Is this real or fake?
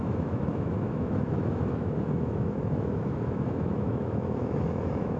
fake